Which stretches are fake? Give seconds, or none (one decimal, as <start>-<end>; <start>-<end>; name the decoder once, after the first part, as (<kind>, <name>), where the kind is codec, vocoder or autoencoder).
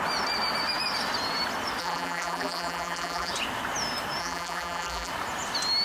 1.8-3.3 (vocoder, BigVGAN v2); 4.2-5.1